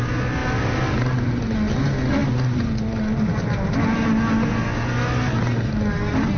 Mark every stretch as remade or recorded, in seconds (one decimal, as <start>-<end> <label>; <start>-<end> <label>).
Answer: 0.0-6.4 recorded